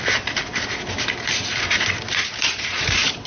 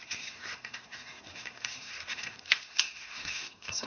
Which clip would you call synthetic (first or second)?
second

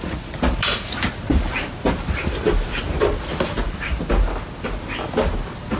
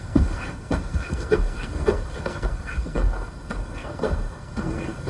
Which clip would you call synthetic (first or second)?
second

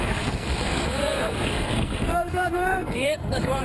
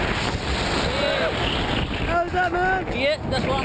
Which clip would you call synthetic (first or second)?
first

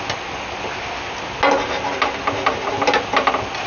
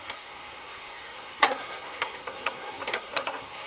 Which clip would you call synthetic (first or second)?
second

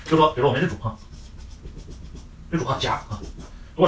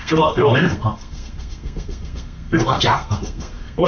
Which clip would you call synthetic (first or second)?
second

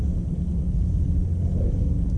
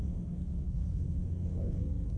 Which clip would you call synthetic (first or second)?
second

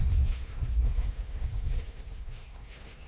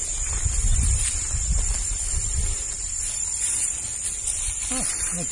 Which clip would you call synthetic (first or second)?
first